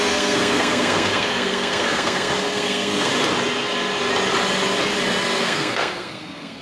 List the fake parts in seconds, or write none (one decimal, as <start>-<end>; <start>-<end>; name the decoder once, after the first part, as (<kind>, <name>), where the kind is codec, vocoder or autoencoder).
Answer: 0.0-3.1 (codec, SNAC); 5.4-6.6